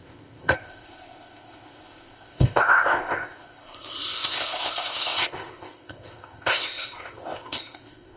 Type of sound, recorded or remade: remade